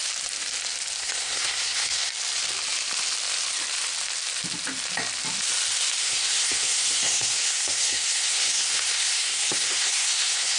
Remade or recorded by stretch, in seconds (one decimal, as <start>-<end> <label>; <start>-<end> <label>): 0.0-1.0 recorded; 1.0-2.1 remade; 2.1-6.0 recorded; 6.0-10.6 remade